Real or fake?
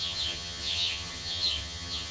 fake